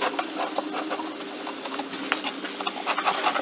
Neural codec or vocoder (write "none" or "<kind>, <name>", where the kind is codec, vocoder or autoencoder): none